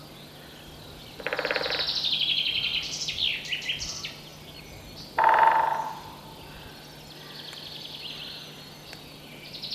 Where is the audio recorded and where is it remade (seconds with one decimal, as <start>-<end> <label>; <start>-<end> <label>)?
0.0-9.7 recorded